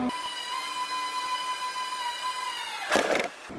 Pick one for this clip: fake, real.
real